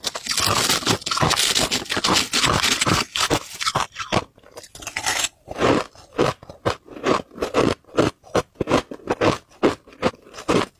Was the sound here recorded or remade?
recorded